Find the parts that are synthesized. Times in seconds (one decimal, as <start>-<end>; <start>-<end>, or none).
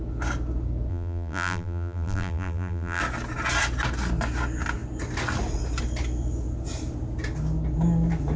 0.9-3.0